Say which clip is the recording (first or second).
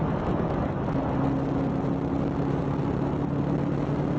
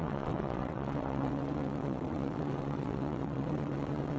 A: first